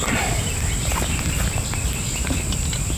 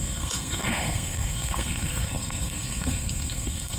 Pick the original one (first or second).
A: first